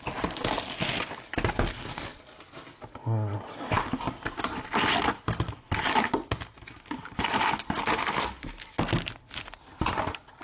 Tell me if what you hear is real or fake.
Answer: real